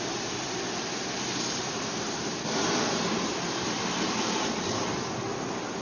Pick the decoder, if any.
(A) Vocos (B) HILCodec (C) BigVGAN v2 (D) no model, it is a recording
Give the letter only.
C